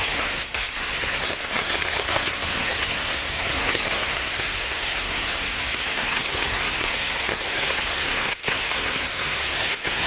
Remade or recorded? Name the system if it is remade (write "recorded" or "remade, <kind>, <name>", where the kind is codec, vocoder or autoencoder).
remade, codec, SNAC